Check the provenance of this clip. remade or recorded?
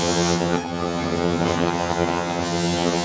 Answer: remade